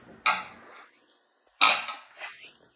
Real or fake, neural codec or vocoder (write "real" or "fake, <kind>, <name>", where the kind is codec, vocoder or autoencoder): real